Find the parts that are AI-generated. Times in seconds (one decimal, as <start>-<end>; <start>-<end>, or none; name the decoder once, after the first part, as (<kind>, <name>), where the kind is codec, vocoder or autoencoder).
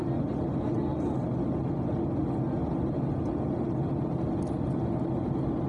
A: none